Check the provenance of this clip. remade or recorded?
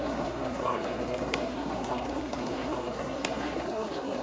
remade